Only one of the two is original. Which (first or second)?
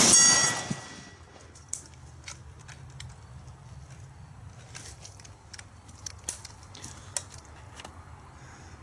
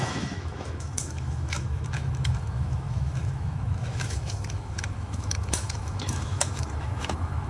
first